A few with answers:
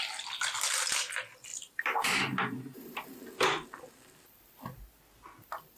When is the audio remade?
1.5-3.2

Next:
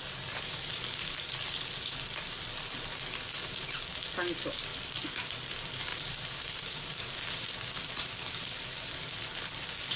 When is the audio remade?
5.9-7.5

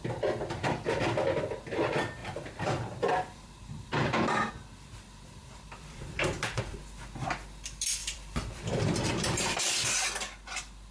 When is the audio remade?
2.2-4.5; 5.4-6.6; 8.0-9.6